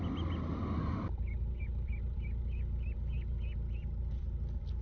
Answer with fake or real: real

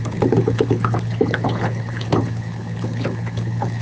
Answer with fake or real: fake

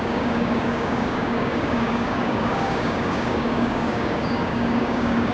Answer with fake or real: fake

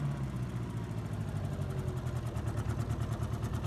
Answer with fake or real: real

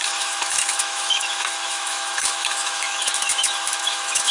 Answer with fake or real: fake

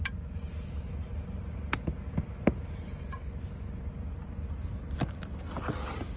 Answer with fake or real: real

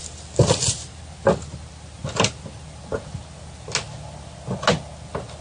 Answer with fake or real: real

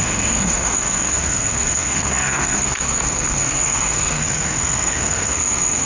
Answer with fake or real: fake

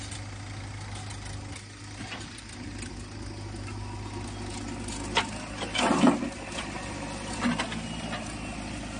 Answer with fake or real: real